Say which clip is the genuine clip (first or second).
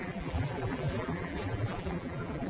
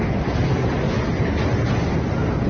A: second